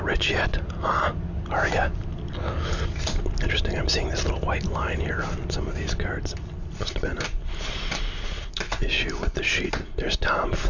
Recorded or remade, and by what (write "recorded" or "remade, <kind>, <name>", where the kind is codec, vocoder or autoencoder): recorded